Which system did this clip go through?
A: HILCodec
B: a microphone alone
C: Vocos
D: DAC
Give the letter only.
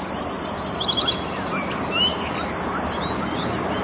B